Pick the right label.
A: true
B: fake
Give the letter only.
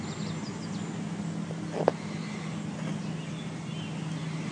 A